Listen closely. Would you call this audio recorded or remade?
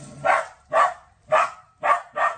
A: recorded